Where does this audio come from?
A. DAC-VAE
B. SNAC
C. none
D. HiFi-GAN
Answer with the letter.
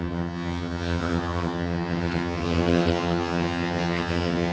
D